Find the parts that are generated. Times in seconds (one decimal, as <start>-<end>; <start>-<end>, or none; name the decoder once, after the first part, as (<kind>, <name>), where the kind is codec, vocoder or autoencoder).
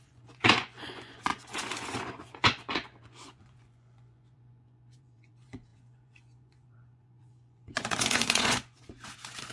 0.0-9.5 (vocoder, Vocos)